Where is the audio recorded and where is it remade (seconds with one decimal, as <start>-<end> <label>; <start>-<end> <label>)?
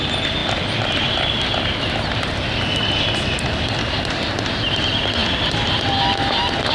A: 0.0-6.7 recorded